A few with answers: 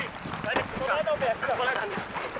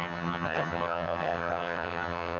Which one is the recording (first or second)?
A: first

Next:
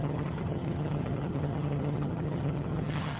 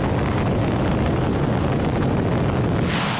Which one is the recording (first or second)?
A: second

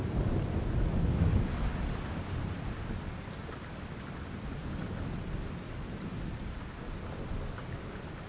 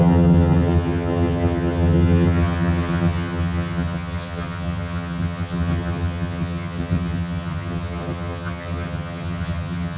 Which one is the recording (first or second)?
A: first